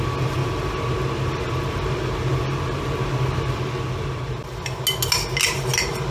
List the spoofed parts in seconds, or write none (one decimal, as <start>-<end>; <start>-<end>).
none